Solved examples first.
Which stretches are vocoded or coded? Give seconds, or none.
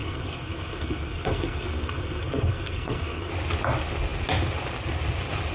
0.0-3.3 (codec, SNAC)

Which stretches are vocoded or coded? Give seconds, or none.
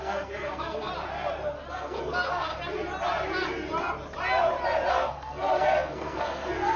0.0-0.9 (codec, SNAC); 1.7-2.5; 4.9-6.8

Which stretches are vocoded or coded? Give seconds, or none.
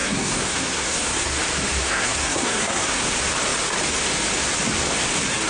0.0-1.4 (codec, SNAC); 1.8-3.1